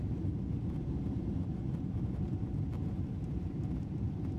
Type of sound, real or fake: fake